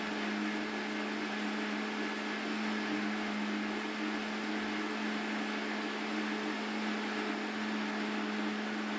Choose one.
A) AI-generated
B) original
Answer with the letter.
B